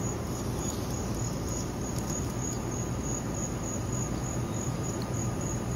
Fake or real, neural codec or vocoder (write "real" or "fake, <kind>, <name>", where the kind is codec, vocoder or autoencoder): fake, vocoder, BigVGAN v2